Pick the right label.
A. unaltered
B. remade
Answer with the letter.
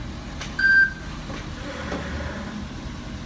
A